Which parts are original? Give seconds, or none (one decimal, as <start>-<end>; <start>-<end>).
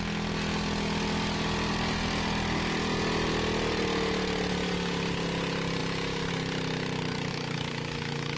0.0-7.3